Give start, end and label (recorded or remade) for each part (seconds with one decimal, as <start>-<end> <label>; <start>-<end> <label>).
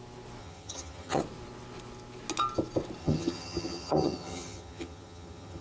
0.0-0.4 recorded; 0.4-1.2 remade; 1.2-3.0 recorded; 3.0-5.6 remade